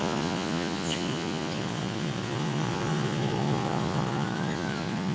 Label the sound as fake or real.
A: fake